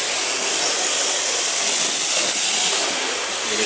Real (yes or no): yes